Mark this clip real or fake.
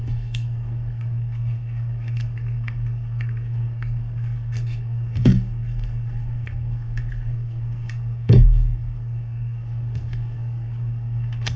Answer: fake